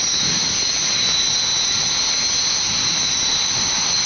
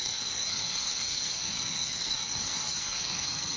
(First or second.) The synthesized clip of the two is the second